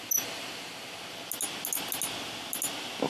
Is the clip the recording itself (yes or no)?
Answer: yes